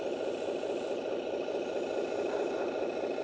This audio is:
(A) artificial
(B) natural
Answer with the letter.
B